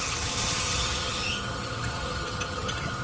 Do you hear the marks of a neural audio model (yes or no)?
yes